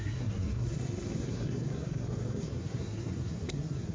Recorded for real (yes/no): no